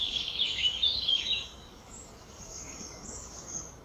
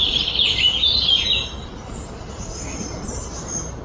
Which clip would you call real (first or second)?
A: second